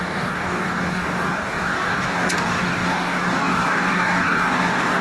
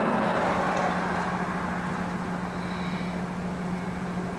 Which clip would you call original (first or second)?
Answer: second